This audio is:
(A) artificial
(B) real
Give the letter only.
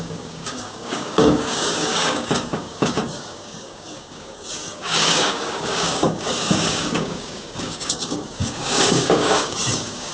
A